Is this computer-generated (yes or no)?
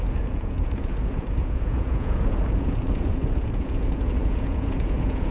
yes